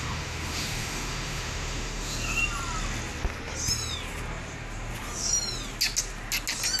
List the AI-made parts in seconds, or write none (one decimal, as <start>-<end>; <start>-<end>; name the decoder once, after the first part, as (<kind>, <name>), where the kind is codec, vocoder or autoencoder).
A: 0.0-2.4 (autoencoder, DAC-VAE)